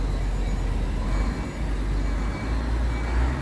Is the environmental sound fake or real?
real